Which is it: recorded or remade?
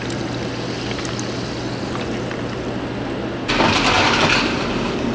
recorded